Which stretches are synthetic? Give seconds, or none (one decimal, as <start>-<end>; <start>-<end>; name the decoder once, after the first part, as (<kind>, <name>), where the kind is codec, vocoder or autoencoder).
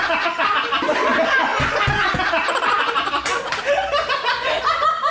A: none